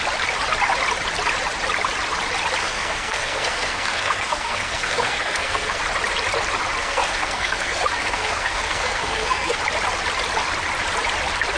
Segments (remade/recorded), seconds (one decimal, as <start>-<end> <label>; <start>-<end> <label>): 0.0-2.6 recorded; 2.6-5.8 remade; 5.8-6.8 recorded; 6.8-9.6 remade; 9.6-11.6 recorded